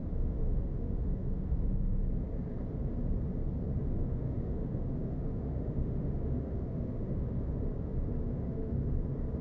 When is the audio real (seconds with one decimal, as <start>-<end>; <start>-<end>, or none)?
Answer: 0.0-0.4; 2.0-4.0; 7.5-8.2; 8.9-9.4